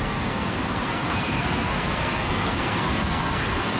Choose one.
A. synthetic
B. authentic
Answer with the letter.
A